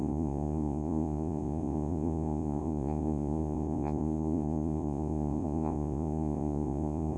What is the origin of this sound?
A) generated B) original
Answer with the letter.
A